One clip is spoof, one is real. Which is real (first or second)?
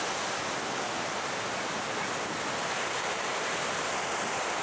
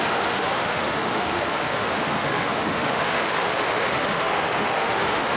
first